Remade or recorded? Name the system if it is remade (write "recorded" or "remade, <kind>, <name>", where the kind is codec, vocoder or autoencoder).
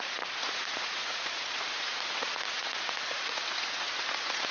remade, vocoder, Vocos